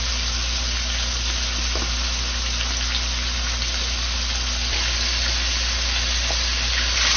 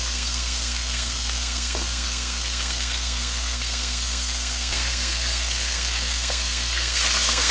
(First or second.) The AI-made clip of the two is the second